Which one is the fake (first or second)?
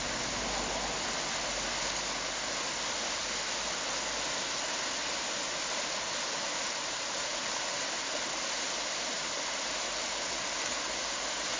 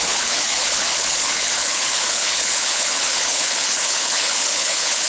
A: second